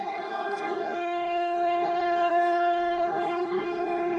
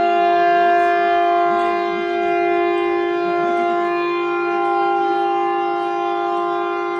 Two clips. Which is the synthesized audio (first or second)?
first